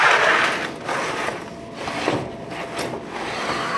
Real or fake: real